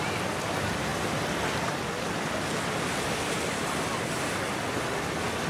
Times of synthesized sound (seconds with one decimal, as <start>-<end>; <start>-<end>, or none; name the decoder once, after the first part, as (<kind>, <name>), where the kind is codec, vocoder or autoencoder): none